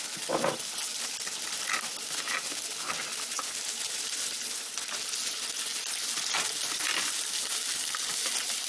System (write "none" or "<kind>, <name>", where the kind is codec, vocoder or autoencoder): none